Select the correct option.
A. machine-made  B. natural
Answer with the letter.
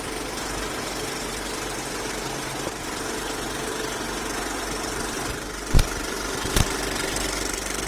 B